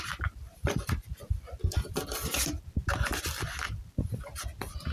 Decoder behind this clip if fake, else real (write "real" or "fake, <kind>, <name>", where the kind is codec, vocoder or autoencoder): real